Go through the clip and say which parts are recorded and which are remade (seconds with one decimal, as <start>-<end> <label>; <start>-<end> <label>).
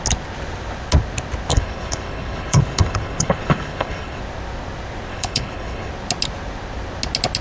0.0-1.5 recorded; 1.5-4.2 remade; 4.2-5.1 recorded; 5.1-5.9 remade; 5.9-7.4 recorded